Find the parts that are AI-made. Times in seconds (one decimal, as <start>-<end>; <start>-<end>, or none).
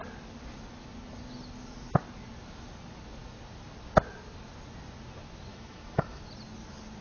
5.5-6.2